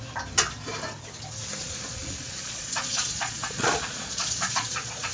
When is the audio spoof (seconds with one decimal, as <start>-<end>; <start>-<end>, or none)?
1.6-5.1